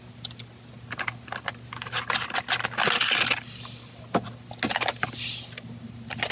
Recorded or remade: recorded